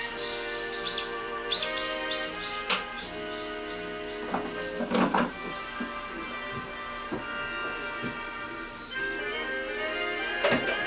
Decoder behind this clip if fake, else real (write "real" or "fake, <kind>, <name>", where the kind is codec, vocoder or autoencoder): real